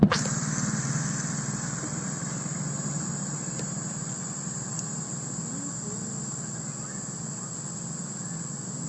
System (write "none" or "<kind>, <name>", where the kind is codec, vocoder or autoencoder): none